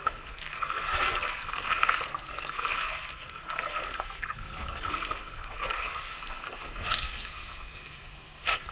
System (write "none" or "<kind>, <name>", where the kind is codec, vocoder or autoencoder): codec, SNAC